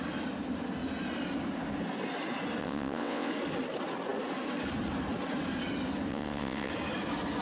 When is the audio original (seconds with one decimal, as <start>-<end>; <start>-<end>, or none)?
0.0-2.6; 3.3-6.1; 6.7-7.4